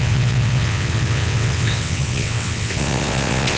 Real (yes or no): no